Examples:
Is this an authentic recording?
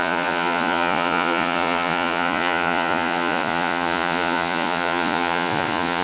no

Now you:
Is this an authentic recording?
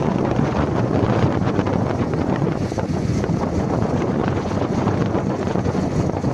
no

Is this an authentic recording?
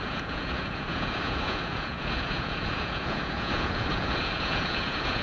no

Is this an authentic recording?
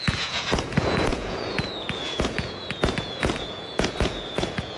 no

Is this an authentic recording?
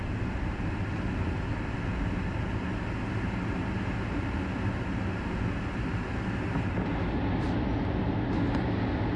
yes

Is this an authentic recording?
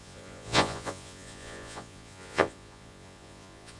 no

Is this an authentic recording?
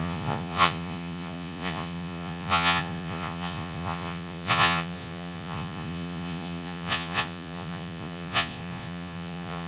no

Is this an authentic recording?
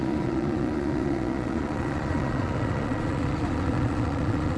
no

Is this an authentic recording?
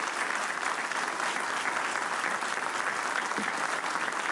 yes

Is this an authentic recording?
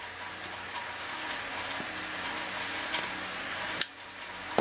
yes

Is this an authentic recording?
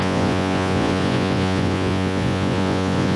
no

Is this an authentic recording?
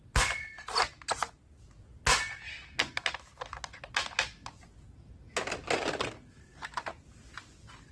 yes